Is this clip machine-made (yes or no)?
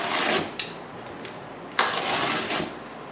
no